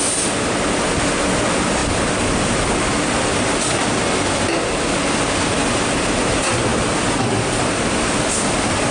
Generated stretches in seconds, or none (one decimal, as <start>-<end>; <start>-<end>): none

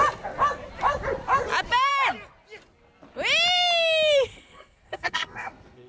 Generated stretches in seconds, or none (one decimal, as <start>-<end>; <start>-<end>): 4.3-5.9

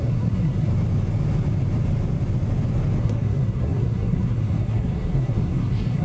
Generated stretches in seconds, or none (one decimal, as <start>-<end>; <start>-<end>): 0.0-0.7; 3.0-6.0

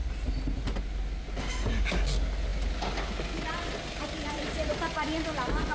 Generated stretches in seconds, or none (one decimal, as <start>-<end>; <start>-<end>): none

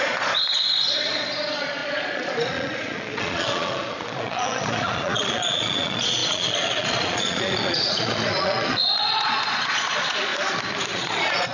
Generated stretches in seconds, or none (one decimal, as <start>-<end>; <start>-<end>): 0.0-10.3; 10.9-11.5

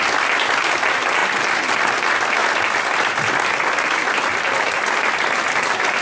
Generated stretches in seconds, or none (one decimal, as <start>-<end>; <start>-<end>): none

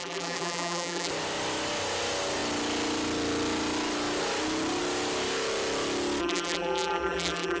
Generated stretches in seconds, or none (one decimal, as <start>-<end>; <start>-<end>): 0.0-1.1; 6.2-7.6

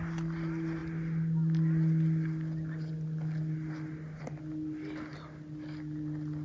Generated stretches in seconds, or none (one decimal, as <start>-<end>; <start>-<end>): none